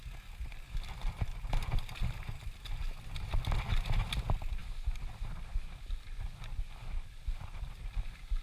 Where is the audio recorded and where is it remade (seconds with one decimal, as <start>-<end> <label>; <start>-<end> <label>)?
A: 0.0-8.4 recorded